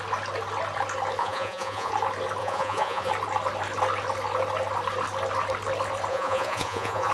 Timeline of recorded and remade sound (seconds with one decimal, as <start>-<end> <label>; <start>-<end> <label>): 0.0-1.2 recorded; 1.2-1.9 remade; 1.9-2.4 recorded; 2.4-3.1 remade; 3.1-6.1 recorded; 6.1-7.1 remade